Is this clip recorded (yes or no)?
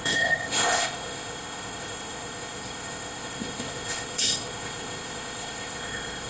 no